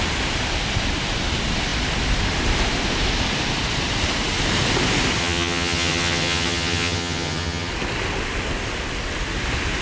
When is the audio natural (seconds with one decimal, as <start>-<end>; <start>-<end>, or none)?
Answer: 0.0-5.2; 7.7-9.8